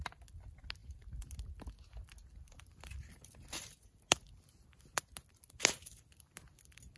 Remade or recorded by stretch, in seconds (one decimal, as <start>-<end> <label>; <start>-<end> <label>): 0.0-7.0 recorded